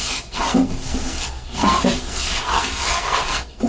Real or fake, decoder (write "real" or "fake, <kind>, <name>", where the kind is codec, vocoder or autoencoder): fake, codec, SNAC